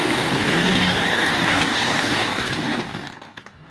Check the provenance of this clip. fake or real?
fake